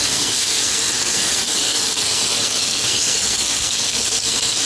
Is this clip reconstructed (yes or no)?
yes